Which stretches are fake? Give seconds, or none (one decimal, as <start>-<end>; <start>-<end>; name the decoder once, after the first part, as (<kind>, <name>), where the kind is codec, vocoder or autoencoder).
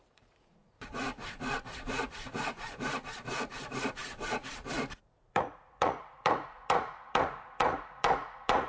0.0-8.7 (vocoder, Vocos)